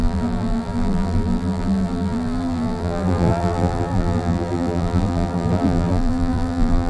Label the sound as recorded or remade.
remade